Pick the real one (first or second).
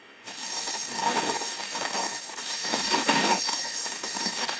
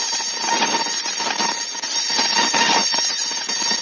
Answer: second